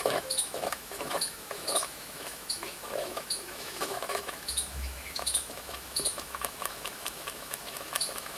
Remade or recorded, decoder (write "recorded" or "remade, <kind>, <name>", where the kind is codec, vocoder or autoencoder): remade, autoencoder, DAC-VAE